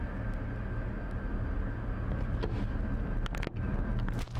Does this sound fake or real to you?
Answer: real